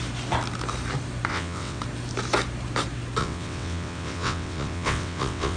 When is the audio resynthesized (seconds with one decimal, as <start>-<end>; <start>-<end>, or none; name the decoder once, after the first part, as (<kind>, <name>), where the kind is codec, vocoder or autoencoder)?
1.3-1.8 (vocoder, WaveNeXt); 3.2-5.6